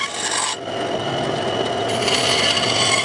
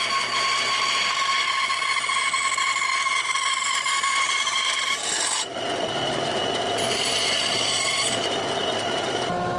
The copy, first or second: second